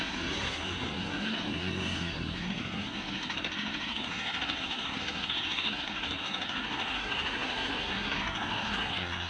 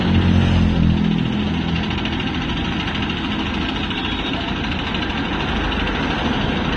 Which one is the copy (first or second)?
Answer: first